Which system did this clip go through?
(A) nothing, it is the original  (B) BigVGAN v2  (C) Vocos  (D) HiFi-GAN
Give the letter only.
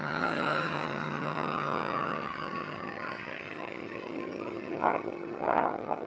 D